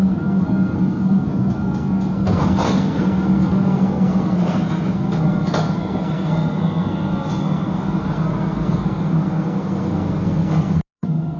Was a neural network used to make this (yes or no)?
yes